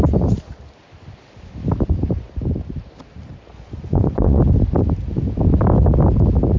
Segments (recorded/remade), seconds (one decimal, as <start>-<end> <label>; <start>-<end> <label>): 0.0-3.5 recorded; 3.5-4.4 remade; 4.4-6.6 recorded